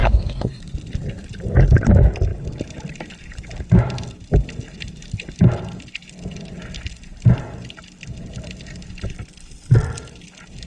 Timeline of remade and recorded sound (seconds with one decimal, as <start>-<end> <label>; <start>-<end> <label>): 0.0-0.6 remade; 0.6-10.7 recorded